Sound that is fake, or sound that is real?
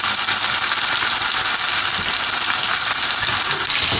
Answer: real